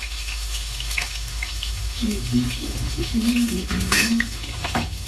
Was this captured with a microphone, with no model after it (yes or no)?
no